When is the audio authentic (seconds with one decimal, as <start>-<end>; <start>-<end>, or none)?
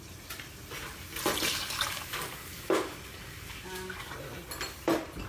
0.0-1.5; 4.1-5.3